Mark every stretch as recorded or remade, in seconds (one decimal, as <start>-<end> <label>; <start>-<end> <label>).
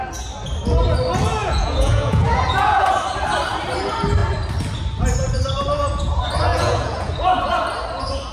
0.0-1.4 recorded; 1.4-2.9 remade; 2.9-6.5 recorded; 6.5-7.1 remade; 7.1-8.3 recorded